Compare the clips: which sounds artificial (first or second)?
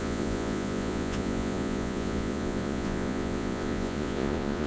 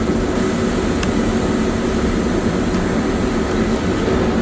first